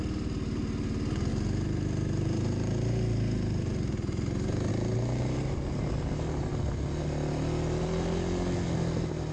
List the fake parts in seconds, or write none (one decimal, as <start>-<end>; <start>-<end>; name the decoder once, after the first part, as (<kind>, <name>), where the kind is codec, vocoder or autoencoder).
1.3-4.7 (vocoder, BigVGAN v2)